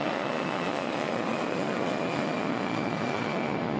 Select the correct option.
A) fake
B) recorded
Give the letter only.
A